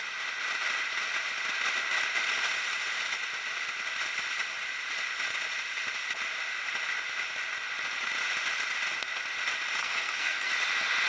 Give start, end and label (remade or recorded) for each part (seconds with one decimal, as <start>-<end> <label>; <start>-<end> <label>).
0.0-9.8 recorded; 9.8-10.5 remade; 10.5-11.1 recorded